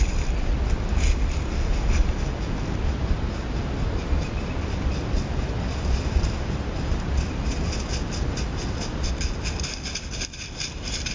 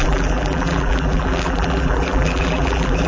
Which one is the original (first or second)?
first